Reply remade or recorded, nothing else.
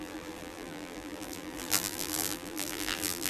remade